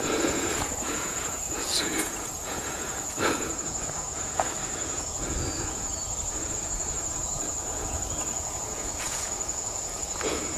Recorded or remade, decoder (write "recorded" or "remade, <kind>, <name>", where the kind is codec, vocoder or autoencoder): remade, vocoder, Vocos